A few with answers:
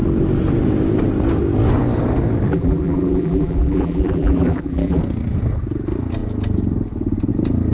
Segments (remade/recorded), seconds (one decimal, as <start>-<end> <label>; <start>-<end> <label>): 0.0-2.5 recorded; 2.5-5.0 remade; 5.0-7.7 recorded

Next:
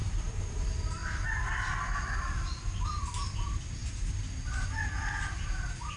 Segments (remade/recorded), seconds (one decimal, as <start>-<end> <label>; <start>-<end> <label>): 0.0-0.5 remade; 0.5-3.8 recorded; 3.8-4.3 remade; 4.3-6.0 recorded

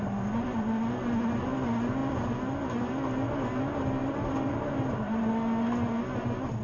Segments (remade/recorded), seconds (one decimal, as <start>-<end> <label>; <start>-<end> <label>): 0.0-4.0 recorded; 4.0-5.3 remade; 5.3-6.6 recorded

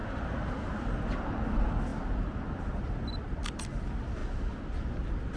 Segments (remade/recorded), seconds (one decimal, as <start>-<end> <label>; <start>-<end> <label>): 0.0-0.8 recorded; 0.8-4.2 remade; 4.2-4.7 recorded; 4.7-5.4 remade

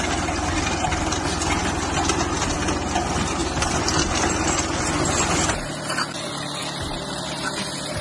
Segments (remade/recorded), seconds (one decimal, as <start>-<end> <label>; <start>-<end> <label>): 0.0-3.4 recorded; 3.4-4.3 remade; 4.3-6.6 recorded; 6.6-7.5 remade; 7.5-8.0 recorded